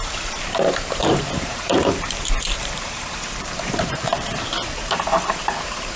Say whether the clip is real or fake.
fake